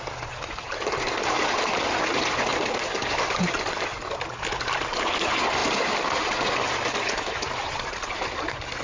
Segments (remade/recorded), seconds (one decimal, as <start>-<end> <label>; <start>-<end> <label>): 0.0-8.8 recorded